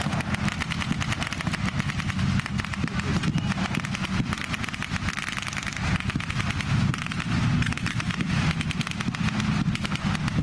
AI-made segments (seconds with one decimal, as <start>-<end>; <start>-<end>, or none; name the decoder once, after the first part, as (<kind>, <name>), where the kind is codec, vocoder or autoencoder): none